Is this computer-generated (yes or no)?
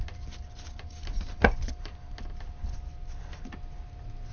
no